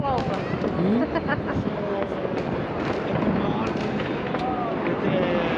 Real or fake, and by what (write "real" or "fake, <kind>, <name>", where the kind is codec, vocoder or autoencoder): real